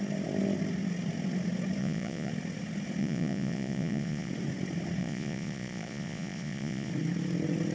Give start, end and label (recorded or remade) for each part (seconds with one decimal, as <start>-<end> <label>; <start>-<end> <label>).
0.0-1.8 recorded; 1.8-2.3 remade; 2.3-3.0 recorded; 3.0-4.3 remade; 4.3-5.0 recorded; 5.0-6.9 remade; 6.9-7.7 recorded